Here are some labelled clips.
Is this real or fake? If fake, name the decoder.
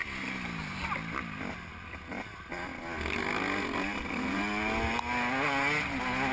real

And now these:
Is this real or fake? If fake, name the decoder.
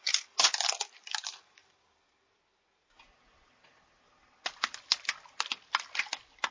real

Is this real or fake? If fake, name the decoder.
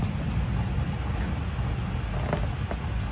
real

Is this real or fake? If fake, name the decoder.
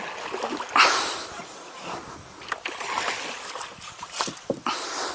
real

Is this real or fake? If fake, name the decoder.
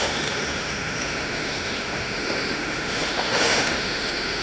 fake, autoencoder, DAC-VAE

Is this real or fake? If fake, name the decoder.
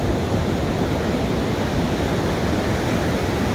real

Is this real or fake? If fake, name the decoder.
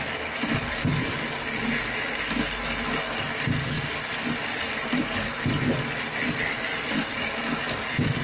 real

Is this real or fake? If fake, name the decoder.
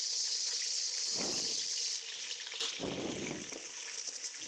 real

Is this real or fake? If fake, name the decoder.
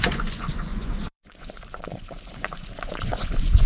fake, vocoder, Vocos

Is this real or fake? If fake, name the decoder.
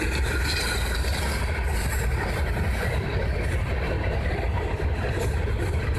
real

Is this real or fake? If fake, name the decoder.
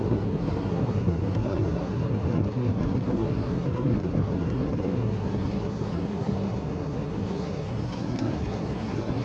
fake, codec, SNAC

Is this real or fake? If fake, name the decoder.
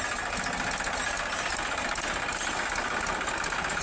real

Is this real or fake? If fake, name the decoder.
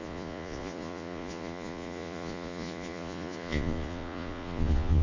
fake, vocoder, Vocos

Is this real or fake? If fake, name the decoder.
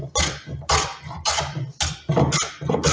real